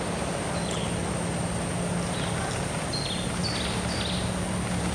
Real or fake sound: real